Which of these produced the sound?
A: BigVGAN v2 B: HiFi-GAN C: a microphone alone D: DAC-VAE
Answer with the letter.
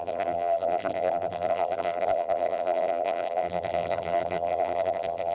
A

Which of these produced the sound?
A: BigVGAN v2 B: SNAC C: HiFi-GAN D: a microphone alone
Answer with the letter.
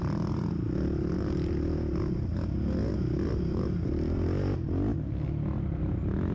D